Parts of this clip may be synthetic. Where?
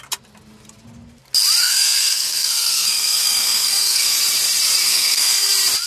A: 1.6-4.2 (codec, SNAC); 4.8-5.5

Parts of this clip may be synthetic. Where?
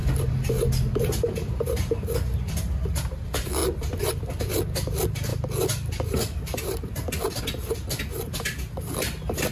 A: 0.0-1.7 (vocoder, BigVGAN v2)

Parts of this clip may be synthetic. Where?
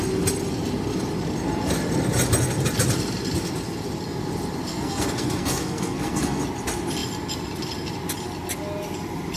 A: 4.7-6.4 (codec, SNAC)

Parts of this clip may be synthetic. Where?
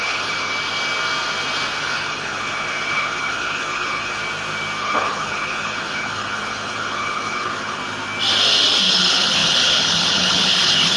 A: 0.0-0.5 (codec, HILCodec); 1.8-4.2; 4.8-7.8; 8.9-11.0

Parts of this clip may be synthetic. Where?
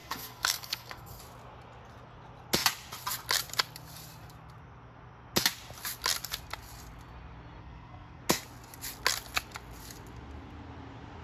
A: 0.0-1.2 (codec, SNAC); 7.6-8.2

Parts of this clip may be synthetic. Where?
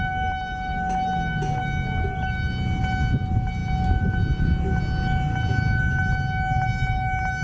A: none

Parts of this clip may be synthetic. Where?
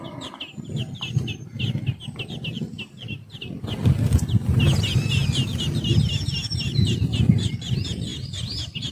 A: 8.1-8.9 (vocoder, BigVGAN v2)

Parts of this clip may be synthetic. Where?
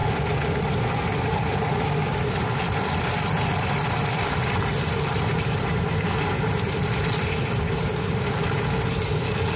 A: 2.5-9.6 (vocoder, BigVGAN v2)